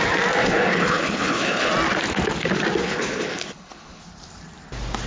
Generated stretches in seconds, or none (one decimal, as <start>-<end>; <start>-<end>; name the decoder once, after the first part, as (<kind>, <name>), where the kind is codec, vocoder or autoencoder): 0.4-1.7 (codec, HILCodec); 2.8-4.0